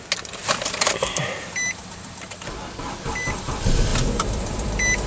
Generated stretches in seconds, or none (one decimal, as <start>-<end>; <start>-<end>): 0.4-2.8; 3.9-5.1